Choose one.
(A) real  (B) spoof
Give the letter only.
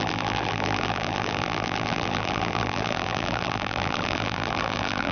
B